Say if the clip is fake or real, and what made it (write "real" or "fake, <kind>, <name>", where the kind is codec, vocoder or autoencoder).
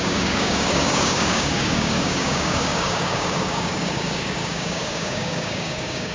fake, codec, DAC